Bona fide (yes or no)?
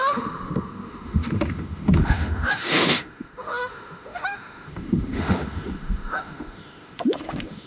no